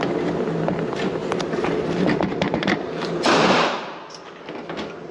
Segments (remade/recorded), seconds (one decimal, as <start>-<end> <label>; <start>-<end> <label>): 0.0-1.2 recorded; 1.2-4.3 remade; 4.3-5.1 recorded